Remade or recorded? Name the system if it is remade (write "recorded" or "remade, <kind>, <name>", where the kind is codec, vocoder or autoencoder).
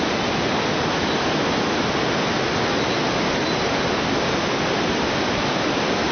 recorded